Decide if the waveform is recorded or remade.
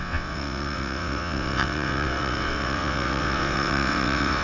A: remade